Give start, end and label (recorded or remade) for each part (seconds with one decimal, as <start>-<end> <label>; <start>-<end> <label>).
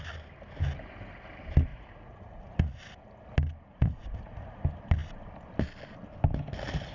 0.0-1.7 recorded; 1.7-2.8 remade; 2.8-3.7 recorded; 3.7-4.6 remade; 4.6-6.9 recorded